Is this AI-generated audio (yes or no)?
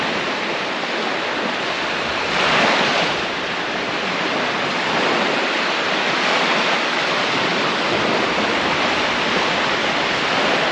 yes